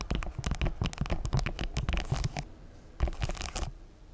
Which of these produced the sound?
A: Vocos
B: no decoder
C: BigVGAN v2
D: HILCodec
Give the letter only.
B